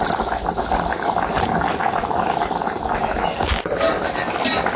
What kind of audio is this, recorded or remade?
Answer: recorded